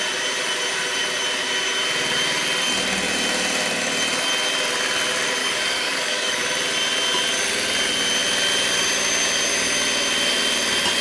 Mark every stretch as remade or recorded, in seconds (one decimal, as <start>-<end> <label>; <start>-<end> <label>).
0.0-5.4 recorded; 5.4-6.4 remade; 6.4-11.0 recorded